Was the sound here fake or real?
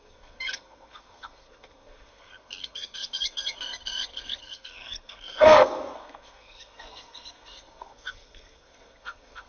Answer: fake